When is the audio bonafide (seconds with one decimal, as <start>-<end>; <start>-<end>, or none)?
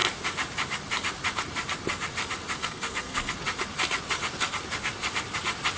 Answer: 0.0-2.6; 3.3-5.8